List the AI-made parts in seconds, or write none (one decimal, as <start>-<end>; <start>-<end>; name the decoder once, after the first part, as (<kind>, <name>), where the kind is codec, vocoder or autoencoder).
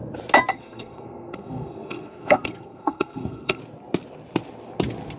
0.5-3.6 (codec, SNAC)